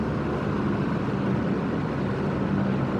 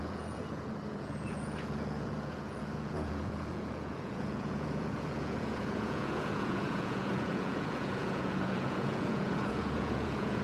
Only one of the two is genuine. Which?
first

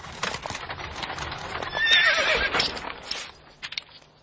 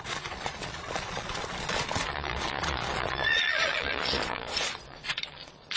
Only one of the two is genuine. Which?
first